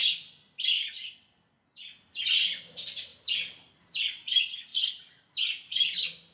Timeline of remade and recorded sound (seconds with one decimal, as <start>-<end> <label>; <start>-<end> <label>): 0.0-6.3 recorded